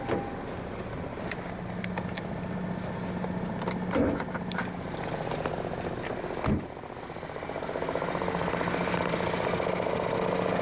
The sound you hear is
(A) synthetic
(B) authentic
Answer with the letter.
B